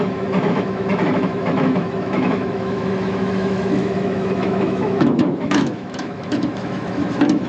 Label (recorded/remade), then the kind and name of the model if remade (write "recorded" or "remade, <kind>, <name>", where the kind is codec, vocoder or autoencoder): remade, autoencoder, DAC-VAE